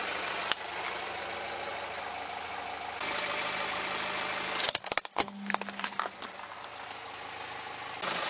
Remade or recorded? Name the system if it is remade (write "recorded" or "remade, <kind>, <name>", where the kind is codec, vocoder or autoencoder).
recorded